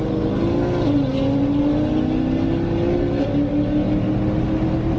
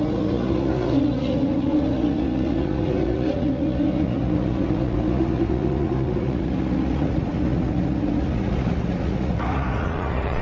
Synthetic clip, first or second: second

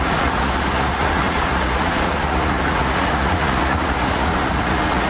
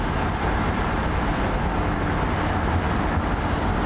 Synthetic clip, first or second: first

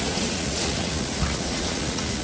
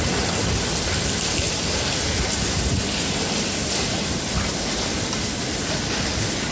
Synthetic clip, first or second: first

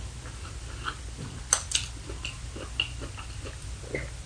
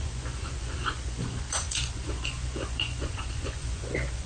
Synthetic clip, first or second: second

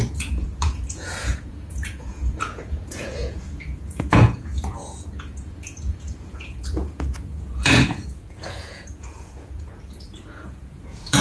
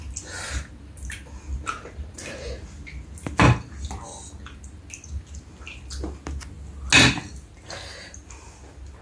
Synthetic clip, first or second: first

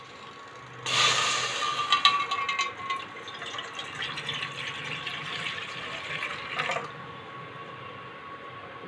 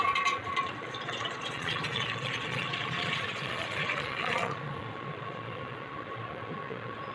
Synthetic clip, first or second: second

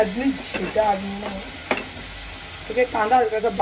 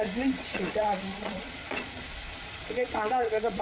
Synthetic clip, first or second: second